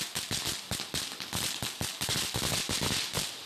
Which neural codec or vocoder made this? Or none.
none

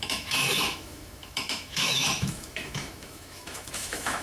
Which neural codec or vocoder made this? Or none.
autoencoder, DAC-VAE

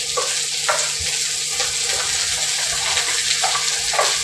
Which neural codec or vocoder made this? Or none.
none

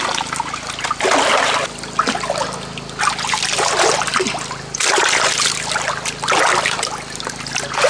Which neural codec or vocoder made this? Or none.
none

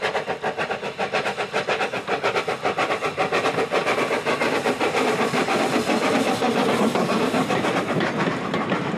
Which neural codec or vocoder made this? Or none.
none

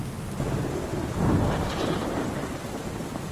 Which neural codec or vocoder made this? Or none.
none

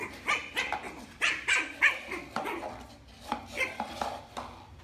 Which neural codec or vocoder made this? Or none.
none